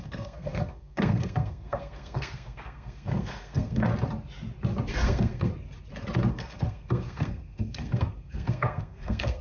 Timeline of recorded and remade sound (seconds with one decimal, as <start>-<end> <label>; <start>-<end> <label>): 0.0-3.9 remade; 3.9-4.9 recorded; 4.9-5.5 remade; 5.5-6.3 recorded; 6.3-9.4 remade